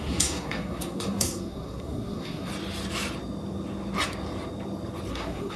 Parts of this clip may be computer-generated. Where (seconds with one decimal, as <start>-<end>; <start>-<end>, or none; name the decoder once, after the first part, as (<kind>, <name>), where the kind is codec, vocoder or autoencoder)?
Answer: 0.0-2.5 (codec, SNAC); 5.1-5.6